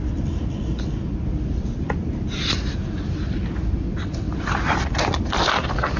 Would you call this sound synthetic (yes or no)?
no